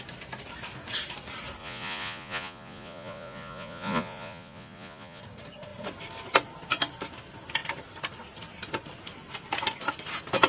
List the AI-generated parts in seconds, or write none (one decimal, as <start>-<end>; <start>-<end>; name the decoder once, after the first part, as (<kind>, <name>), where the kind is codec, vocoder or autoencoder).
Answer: 1.6-5.2 (vocoder, Vocos)